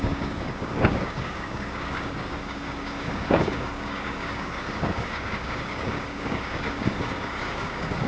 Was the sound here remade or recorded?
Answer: remade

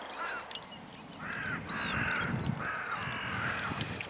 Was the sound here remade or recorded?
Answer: recorded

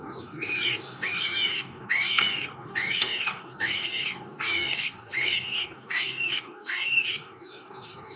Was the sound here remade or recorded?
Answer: remade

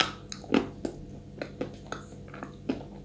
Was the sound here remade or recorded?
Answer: recorded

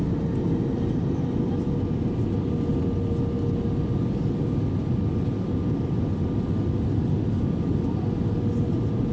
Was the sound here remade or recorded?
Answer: recorded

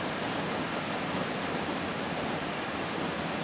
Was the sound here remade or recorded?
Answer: recorded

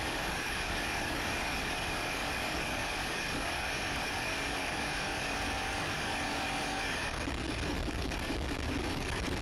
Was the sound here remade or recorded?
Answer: remade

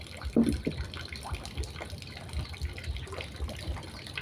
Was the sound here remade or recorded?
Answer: recorded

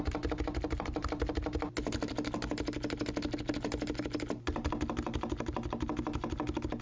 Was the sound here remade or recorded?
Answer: recorded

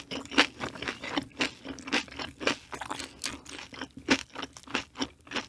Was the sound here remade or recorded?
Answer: recorded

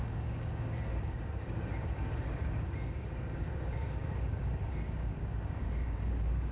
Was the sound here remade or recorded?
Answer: remade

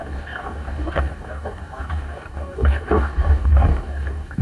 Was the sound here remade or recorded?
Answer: remade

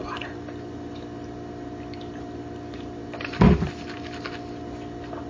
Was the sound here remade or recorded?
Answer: recorded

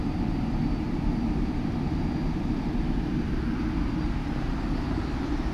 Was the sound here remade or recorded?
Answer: recorded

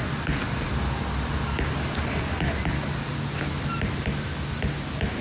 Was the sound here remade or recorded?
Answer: recorded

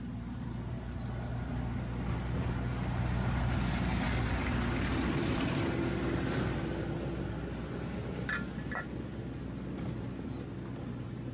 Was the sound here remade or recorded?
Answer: recorded